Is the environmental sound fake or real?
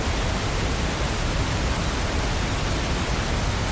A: real